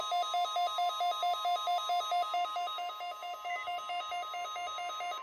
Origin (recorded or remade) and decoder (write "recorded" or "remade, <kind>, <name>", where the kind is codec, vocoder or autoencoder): recorded